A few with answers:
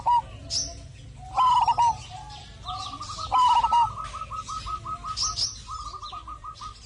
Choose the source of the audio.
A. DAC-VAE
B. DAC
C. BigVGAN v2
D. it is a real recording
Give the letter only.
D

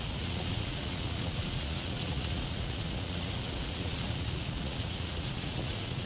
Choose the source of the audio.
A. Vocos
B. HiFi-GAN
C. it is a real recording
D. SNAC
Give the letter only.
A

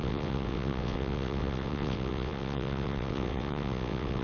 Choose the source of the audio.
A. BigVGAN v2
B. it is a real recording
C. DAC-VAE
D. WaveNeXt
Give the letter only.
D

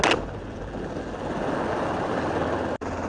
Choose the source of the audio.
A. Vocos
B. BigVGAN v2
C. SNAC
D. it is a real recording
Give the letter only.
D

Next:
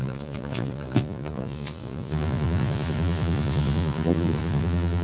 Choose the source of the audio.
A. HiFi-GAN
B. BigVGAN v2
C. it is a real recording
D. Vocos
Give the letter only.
D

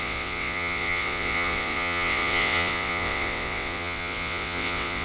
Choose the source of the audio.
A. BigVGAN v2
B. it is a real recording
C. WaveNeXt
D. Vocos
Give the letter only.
C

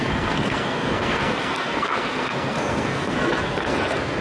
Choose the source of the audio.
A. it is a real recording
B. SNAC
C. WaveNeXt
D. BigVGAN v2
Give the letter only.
B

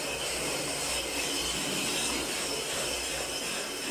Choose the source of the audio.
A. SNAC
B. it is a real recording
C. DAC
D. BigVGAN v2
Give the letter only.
B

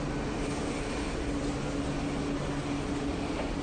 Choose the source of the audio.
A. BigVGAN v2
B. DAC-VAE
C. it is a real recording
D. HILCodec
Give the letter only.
C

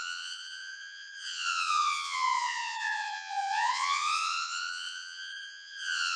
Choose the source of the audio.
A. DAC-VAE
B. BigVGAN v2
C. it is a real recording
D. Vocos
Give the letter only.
D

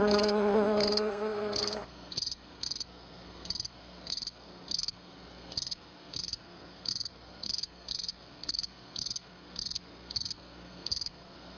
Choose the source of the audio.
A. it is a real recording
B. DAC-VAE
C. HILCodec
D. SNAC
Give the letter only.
D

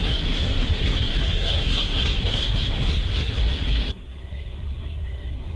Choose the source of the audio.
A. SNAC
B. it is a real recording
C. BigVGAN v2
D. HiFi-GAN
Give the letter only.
A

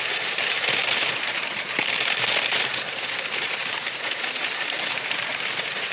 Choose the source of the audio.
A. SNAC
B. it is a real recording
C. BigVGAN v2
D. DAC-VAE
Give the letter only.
C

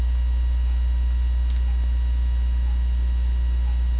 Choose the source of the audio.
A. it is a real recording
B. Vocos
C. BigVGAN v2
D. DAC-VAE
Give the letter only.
A